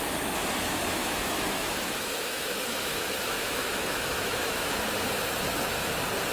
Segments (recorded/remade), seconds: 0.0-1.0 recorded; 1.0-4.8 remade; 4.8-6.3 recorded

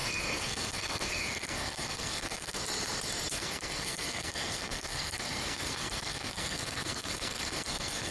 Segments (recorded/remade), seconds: 0.0-2.6 remade; 2.6-3.3 recorded; 3.3-8.1 remade

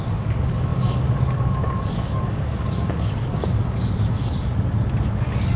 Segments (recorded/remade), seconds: 0.0-5.6 remade

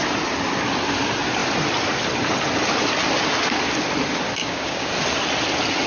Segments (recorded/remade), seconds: 0.0-4.4 recorded; 4.4-4.9 remade; 4.9-5.9 recorded

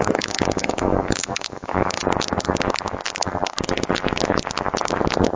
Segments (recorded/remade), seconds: 0.0-2.0 remade; 2.0-5.4 recorded

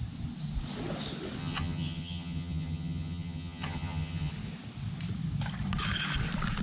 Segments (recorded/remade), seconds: 0.0-1.4 recorded; 1.4-4.3 remade; 4.3-6.6 recorded

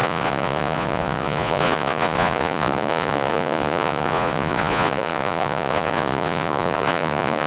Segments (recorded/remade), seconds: 0.0-7.5 remade